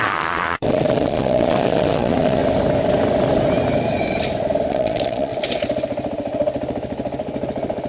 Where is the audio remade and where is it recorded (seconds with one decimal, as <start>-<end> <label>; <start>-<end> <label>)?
0.0-2.4 remade; 2.4-4.7 recorded; 4.7-5.3 remade; 5.3-7.9 recorded